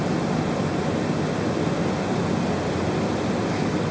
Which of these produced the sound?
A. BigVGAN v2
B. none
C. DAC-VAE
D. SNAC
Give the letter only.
B